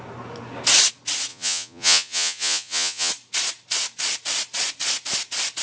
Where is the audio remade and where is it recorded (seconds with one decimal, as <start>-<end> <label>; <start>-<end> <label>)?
0.0-1.3 recorded; 1.3-3.1 remade; 3.1-5.6 recorded